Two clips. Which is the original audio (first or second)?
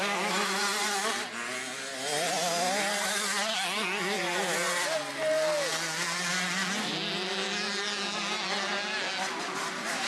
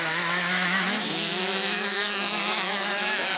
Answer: first